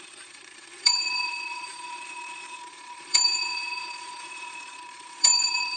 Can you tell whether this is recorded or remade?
remade